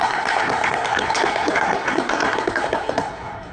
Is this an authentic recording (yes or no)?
no